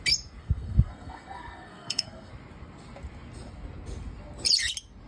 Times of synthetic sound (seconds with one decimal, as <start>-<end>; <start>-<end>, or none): 0.4-2.3